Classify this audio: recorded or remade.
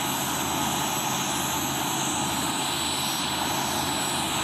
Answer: recorded